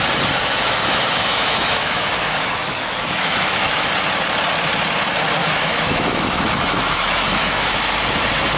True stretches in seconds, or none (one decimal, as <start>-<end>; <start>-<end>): 0.0-0.5; 3.9-5.4; 7.8-8.6